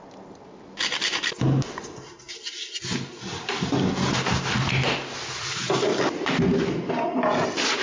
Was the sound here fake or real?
real